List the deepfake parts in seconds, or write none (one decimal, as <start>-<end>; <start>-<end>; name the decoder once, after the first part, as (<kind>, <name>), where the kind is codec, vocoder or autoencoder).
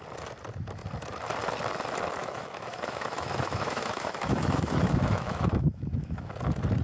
2.2-6.3 (autoencoder, DAC-VAE)